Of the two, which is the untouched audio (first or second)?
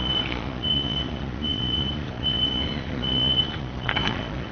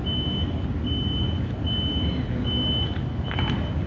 second